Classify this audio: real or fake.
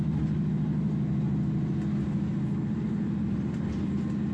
real